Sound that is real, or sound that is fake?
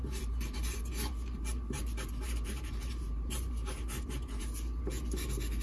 fake